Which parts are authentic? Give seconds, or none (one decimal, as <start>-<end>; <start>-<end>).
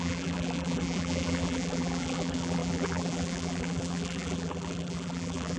none